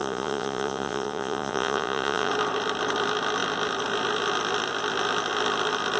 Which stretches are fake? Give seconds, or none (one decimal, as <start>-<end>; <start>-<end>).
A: 0.0-2.3